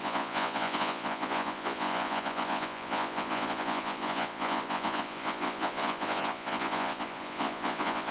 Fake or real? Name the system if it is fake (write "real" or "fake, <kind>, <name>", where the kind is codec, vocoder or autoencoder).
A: fake, vocoder, Vocos